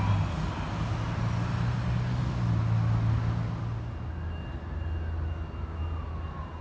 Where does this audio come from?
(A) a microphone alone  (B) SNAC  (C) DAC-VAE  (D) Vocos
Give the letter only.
A